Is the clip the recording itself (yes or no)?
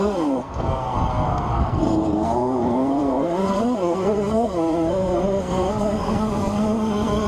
no